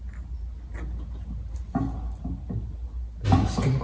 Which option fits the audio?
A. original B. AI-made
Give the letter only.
A